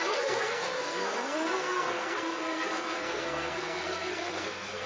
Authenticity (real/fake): fake